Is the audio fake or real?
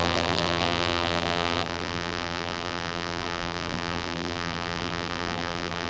fake